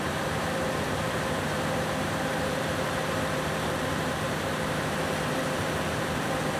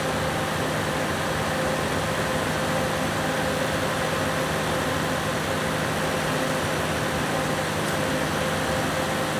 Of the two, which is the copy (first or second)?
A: first